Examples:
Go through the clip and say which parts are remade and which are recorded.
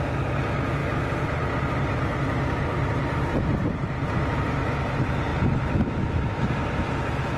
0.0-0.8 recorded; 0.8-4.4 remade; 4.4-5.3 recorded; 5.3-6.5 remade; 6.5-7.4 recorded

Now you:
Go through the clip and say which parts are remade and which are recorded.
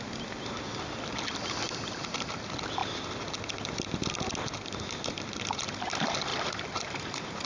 0.0-6.3 recorded; 6.3-7.5 remade